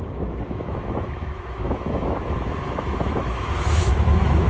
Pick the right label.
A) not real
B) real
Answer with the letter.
A